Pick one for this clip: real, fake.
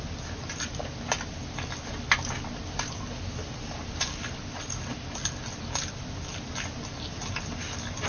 real